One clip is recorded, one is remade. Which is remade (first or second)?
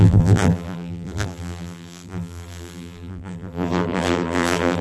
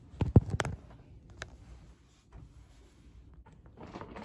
first